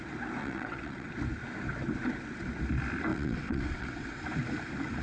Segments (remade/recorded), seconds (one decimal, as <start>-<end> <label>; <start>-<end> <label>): 0.0-0.4 recorded; 0.4-1.1 remade; 1.1-3.1 recorded; 3.1-4.2 remade; 4.2-5.0 recorded